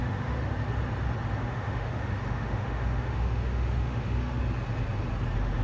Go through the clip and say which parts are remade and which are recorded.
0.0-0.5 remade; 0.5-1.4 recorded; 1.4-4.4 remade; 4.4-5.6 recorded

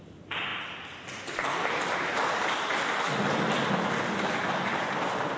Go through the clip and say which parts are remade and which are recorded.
0.0-5.4 recorded

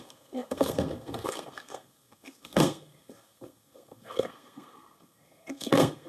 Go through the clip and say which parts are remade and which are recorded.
0.0-6.1 remade